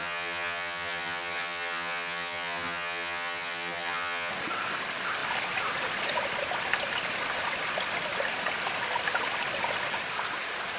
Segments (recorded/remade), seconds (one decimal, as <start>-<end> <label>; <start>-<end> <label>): 0.0-4.3 remade; 4.3-10.8 recorded